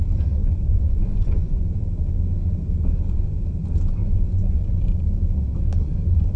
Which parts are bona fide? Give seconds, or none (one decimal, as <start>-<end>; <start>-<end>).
0.0-0.4; 1.7-4.0; 5.0-6.4